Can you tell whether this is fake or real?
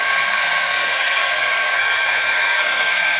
fake